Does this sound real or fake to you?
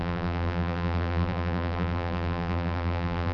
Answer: fake